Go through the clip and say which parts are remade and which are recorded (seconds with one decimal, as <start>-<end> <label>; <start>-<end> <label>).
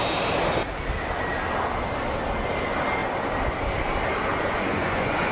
0.0-4.3 recorded; 4.3-5.3 remade